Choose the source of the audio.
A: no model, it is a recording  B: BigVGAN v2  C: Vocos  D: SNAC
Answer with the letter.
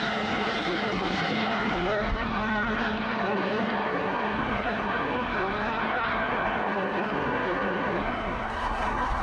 D